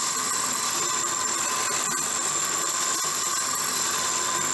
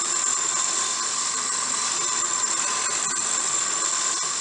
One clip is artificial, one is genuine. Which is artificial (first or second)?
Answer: second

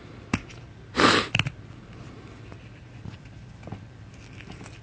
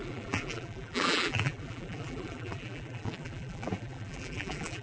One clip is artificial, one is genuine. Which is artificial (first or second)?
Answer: second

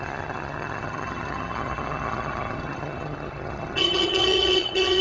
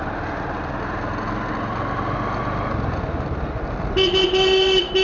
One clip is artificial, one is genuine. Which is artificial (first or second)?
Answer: first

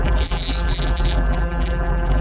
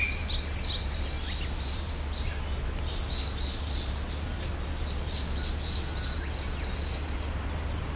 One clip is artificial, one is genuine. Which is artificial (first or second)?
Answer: first